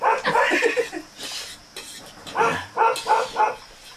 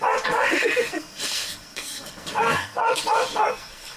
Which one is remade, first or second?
second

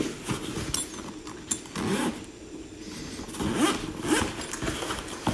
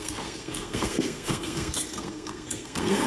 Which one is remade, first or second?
second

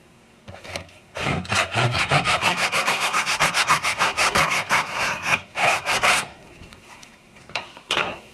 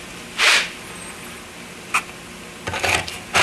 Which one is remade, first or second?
first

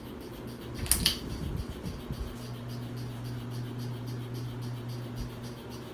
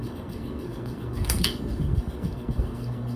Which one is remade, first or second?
second